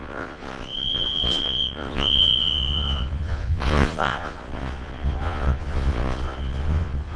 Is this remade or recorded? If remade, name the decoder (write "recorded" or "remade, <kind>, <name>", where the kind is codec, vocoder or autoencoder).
remade, vocoder, Vocos